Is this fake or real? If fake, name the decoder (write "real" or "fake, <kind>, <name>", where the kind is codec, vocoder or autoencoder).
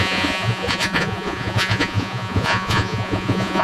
fake, vocoder, Vocos